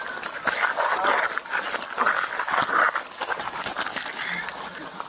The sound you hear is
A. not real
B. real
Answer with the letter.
B